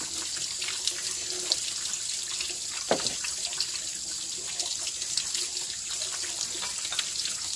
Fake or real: real